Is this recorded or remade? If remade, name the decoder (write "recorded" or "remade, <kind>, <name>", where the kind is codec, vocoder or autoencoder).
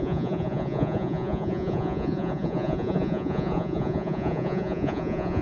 remade, vocoder, Vocos